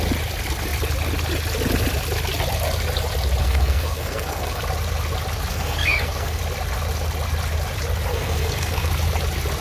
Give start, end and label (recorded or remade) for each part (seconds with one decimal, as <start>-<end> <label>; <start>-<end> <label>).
0.0-3.4 recorded; 3.4-4.6 remade; 4.6-5.5 recorded; 5.5-6.4 remade; 6.4-8.1 recorded; 8.1-8.9 remade; 8.9-9.6 recorded